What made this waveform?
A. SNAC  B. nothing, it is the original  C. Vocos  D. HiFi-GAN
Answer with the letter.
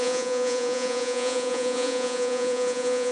C